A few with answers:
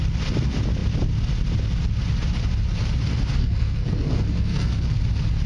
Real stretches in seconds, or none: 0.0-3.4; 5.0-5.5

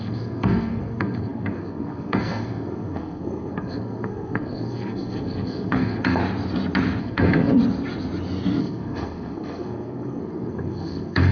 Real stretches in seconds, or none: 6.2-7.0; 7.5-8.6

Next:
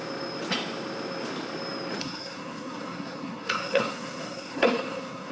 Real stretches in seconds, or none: 0.0-2.0

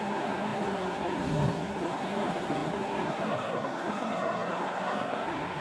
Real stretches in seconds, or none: none